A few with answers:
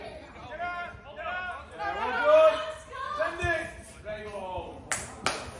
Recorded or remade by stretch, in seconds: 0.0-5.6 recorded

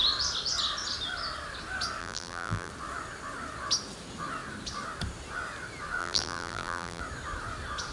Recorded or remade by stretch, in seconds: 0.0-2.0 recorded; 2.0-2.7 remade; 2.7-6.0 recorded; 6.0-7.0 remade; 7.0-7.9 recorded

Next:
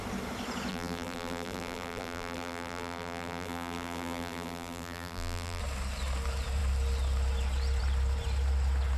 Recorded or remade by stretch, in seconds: 0.0-0.7 recorded; 0.7-5.6 remade; 5.6-9.0 recorded

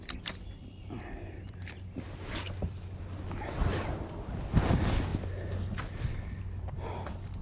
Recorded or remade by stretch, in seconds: 0.0-7.4 recorded

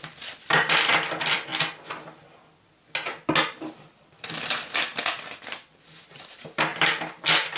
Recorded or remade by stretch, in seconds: 0.0-1.5 remade; 1.5-3.6 recorded; 3.6-4.9 remade; 4.9-5.7 recorded; 5.7-7.6 remade